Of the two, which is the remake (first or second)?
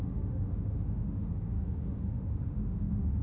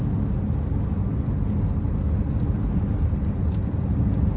first